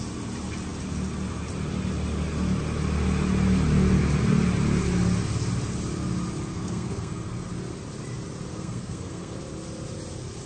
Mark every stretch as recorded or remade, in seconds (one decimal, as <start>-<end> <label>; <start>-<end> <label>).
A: 0.0-6.5 recorded; 6.5-7.5 remade; 7.5-8.5 recorded; 8.5-9.4 remade; 9.4-10.5 recorded